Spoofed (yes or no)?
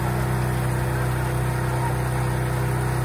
no